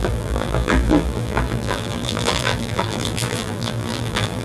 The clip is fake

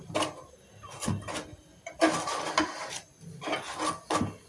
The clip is real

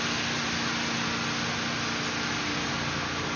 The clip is real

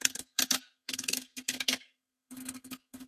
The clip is fake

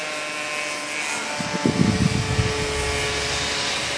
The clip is real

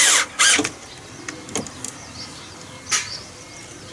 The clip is real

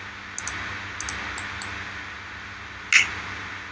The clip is real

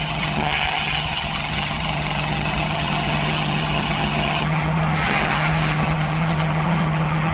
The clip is fake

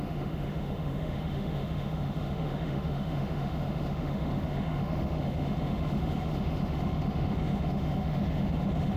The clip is fake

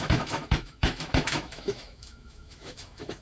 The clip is fake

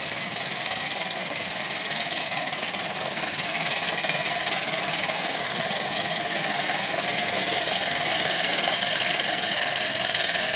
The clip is fake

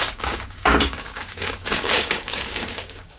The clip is fake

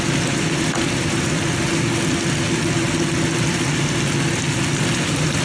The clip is real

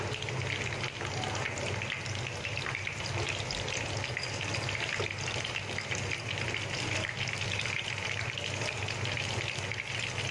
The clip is real